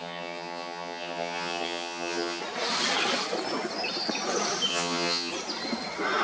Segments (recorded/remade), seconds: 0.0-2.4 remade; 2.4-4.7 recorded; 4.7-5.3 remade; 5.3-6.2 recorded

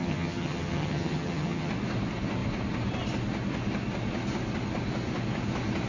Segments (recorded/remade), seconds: 0.0-1.7 remade; 1.7-5.9 recorded

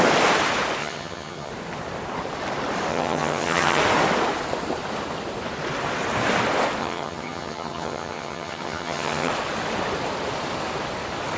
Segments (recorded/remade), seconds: 0.0-0.8 recorded; 0.8-1.5 remade; 1.5-2.9 recorded; 2.9-3.8 remade; 3.8-6.8 recorded; 6.8-9.3 remade; 9.3-11.4 recorded